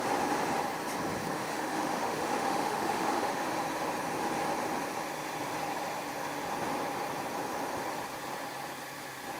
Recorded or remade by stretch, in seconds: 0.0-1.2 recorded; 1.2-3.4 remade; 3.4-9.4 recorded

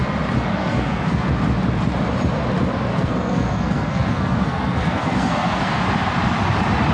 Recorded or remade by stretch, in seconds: 0.0-0.5 recorded; 0.5-1.3 remade; 1.3-2.9 recorded; 2.9-5.8 remade; 5.8-6.9 recorded

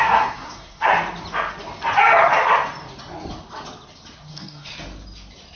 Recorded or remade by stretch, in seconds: 0.0-0.9 remade; 0.9-4.3 recorded; 4.3-4.7 remade; 4.7-5.6 recorded

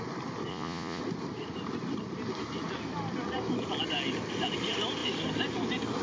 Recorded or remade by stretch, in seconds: 0.0-0.5 recorded; 0.5-1.0 remade; 1.0-6.0 recorded